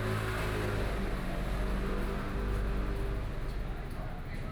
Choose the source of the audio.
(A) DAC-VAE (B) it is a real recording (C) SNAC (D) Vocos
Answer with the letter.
B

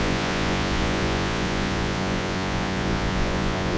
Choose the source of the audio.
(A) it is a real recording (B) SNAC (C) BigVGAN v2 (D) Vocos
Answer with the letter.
D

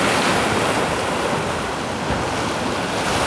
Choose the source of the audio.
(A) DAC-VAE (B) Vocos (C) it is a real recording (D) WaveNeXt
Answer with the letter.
C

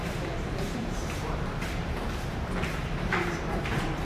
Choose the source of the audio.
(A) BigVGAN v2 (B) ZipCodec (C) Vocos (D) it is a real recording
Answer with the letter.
A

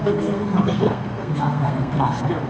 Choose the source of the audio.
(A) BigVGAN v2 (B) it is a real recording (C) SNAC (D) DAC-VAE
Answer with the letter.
C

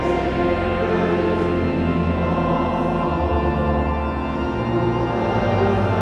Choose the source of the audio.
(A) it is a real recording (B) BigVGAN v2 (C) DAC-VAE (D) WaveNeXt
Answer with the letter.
A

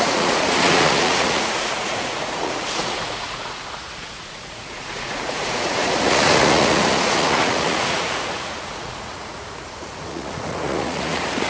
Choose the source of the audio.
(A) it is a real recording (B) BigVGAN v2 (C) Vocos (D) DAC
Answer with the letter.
C